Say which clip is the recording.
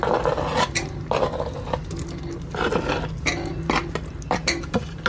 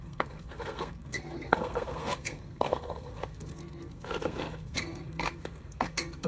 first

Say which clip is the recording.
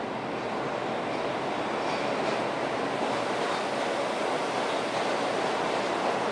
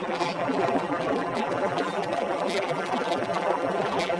first